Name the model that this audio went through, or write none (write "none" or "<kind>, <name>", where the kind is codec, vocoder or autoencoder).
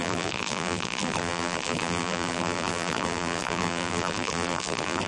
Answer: vocoder, BigVGAN v2